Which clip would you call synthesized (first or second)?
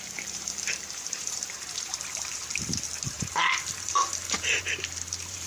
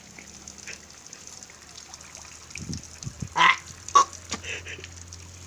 first